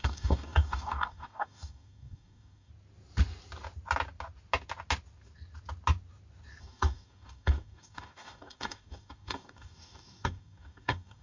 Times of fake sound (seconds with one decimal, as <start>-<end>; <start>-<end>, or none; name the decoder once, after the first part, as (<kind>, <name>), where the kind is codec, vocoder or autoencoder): 0.0-2.7 (codec, DAC); 6.6-11.2